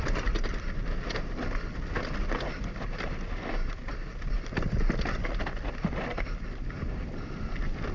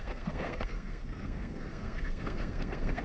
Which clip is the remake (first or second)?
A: second